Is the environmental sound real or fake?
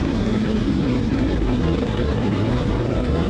fake